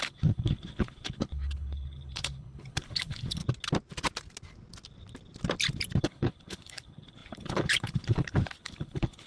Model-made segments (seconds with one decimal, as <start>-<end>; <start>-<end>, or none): 0.0-3.4; 6.0-9.3